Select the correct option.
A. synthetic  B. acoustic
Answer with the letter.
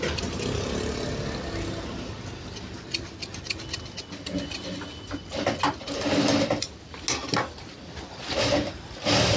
B